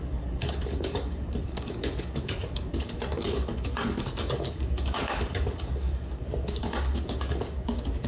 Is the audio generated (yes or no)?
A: yes